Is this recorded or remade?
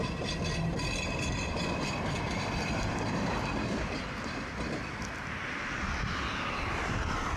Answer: recorded